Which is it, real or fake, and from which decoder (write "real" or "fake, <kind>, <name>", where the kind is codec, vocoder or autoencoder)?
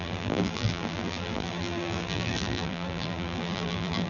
fake, vocoder, BigVGAN v2